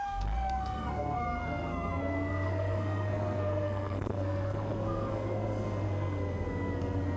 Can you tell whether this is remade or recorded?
remade